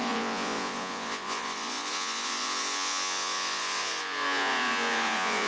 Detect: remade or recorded remade